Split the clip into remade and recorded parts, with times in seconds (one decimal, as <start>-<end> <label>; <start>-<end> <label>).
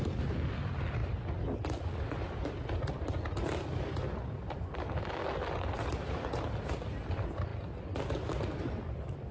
0.0-9.3 recorded